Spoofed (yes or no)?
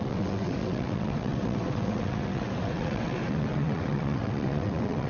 yes